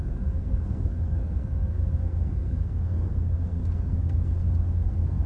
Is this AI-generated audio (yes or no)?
yes